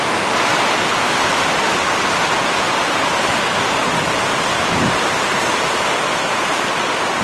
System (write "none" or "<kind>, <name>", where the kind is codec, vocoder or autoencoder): none